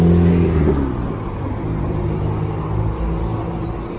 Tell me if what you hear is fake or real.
real